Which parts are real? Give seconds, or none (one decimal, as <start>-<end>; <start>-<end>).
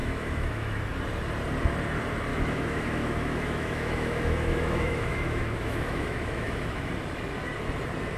0.8-2.3; 6.9-8.2